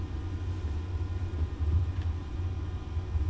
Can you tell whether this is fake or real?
real